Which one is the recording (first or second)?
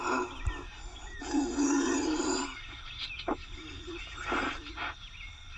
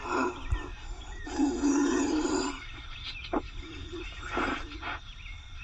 first